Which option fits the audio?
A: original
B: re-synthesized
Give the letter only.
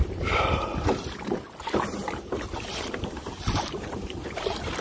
B